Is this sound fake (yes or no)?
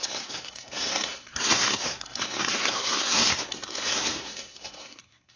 yes